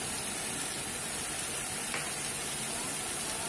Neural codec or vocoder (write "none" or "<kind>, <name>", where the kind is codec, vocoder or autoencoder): none